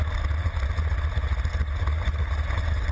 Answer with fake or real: real